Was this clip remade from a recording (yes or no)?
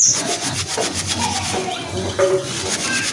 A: yes